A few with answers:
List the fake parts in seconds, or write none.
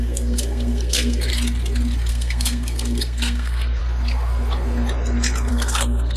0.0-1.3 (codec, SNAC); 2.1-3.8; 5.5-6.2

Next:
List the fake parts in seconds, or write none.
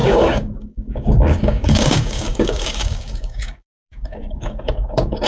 0.0-5.3 (codec, DAC)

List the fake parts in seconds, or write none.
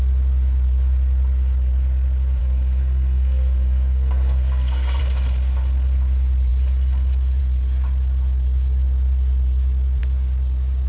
2.4-5.0 (codec, SNAC)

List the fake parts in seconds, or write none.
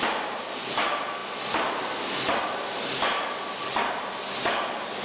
none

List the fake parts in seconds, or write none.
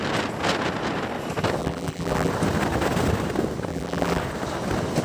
1.6-2.3 (vocoder, BigVGAN v2); 3.7-4.2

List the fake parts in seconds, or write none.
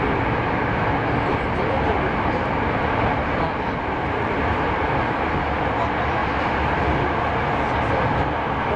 none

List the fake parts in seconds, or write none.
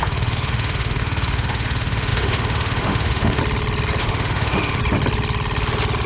0.0-3.4 (autoencoder, DAC-VAE); 4.0-4.8